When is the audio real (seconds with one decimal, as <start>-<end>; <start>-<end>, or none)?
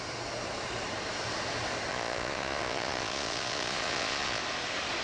0.0-1.9; 4.4-5.0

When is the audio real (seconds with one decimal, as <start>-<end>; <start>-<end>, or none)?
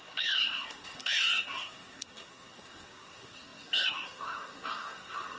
none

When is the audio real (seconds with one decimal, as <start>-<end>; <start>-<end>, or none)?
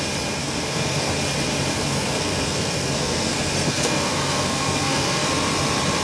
0.0-0.4; 1.1-1.7; 5.3-6.0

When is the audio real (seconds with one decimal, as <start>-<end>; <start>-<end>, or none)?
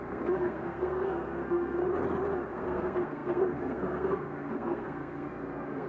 1.8-2.5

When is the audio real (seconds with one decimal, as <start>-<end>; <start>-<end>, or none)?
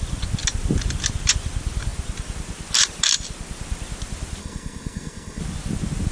0.0-4.4; 5.4-6.1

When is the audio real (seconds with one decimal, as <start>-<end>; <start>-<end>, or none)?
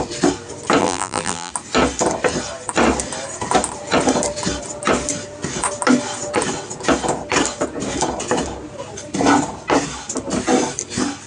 0.0-0.8; 1.5-11.3